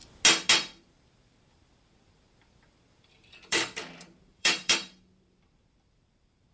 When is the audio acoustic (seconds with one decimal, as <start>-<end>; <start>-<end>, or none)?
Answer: 0.0-0.8

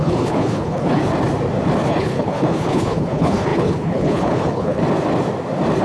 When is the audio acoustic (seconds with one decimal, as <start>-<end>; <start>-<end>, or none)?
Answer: 1.0-1.9; 4.8-5.8

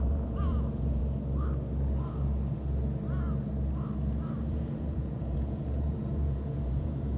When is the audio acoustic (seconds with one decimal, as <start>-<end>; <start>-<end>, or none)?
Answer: 1.0-4.5

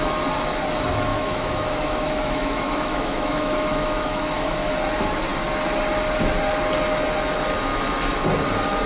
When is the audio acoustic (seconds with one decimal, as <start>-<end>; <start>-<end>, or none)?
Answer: 0.0-1.1; 4.7-7.7; 8.2-8.9

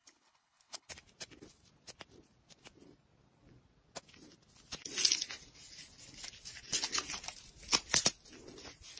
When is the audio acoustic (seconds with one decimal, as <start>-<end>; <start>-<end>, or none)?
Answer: 0.9-9.0

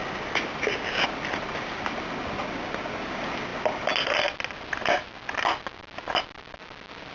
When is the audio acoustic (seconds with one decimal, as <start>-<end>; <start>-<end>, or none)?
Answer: 0.0-7.1